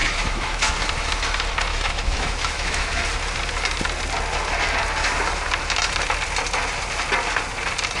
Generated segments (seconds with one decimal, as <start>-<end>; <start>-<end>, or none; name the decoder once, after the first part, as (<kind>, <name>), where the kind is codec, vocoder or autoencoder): 0.0-0.7 (autoencoder, DAC-VAE); 1.7-3.0